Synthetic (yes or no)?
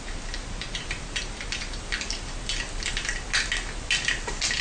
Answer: no